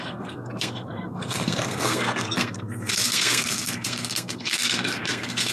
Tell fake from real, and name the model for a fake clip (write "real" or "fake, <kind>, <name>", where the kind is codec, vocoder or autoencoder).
fake, codec, SNAC